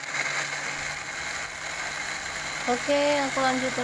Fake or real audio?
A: real